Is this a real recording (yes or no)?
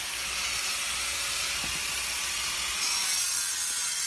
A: yes